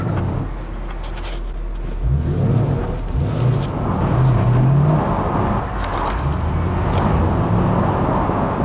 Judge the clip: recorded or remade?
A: recorded